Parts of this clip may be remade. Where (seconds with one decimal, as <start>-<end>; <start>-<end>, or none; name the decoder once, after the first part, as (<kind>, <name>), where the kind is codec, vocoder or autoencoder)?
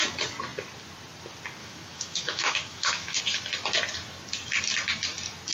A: 1.6-3.2 (autoencoder, DAC-VAE)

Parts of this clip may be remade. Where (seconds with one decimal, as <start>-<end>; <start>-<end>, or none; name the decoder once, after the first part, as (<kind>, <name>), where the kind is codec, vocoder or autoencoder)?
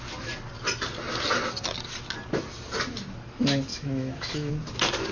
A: 3.7-4.5 (autoencoder, DAC-VAE)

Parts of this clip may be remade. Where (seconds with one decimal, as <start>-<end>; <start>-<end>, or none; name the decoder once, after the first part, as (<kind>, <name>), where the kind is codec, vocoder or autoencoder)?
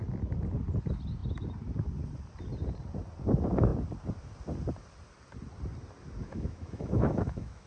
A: 6.2-7.7 (autoencoder, DAC-VAE)